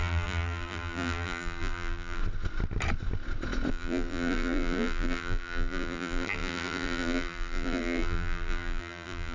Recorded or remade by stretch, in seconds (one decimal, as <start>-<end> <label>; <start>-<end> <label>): 0.0-2.2 remade; 2.2-3.7 recorded; 3.7-9.3 remade